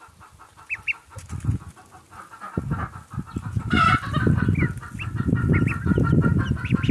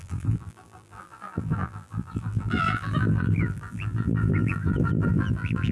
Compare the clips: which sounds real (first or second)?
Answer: first